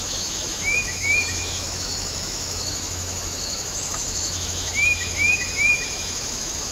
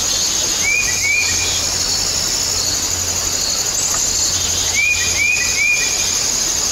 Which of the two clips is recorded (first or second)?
second